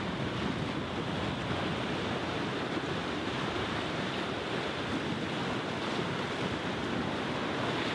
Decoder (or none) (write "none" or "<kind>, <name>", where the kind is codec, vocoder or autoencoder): none